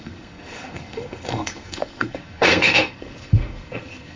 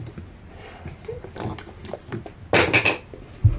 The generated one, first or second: first